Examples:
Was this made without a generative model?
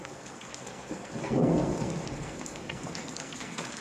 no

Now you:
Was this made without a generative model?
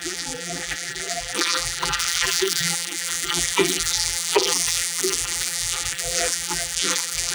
no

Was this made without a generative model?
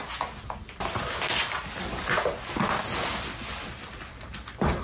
yes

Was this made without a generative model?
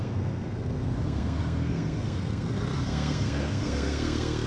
no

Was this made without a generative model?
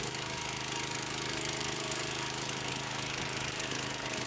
no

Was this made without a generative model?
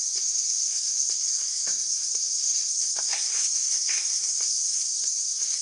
no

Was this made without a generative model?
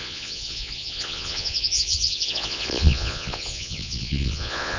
no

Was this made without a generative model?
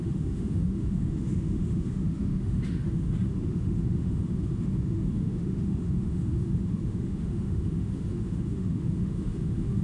no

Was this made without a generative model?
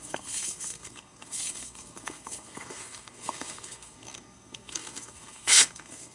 no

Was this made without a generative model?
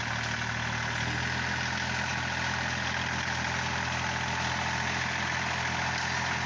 yes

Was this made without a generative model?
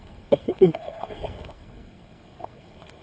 no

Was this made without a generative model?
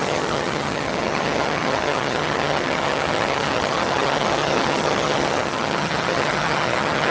no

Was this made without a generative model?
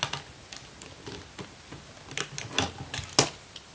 yes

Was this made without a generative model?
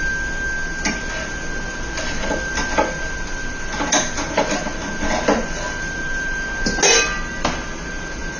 yes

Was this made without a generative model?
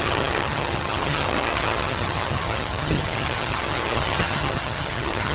no